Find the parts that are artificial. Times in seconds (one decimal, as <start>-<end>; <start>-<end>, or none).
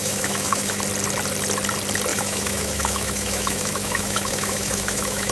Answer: 0.0-0.8; 2.1-5.3